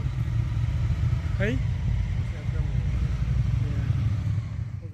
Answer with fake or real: real